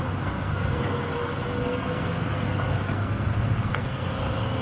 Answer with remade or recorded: remade